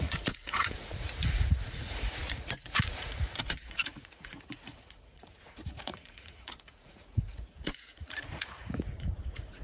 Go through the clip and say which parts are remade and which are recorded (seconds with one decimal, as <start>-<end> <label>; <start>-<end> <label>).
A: 0.0-9.6 remade